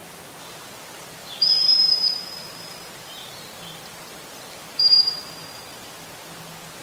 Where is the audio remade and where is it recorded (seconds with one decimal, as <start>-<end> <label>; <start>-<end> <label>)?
0.0-1.2 recorded; 1.2-5.3 remade; 5.3-6.8 recorded